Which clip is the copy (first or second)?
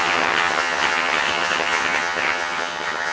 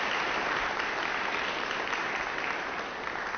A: first